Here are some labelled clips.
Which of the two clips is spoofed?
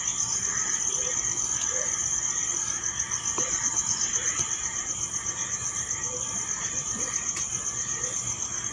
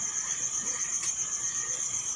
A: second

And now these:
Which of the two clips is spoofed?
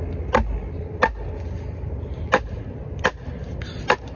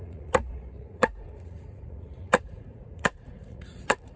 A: second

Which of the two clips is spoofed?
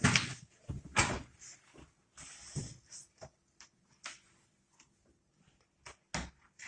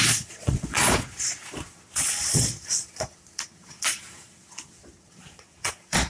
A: second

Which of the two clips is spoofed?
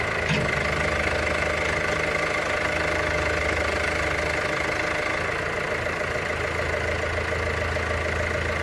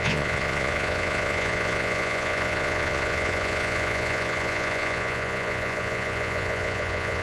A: second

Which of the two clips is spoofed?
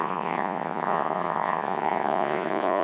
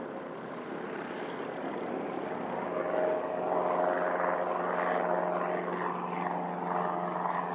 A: first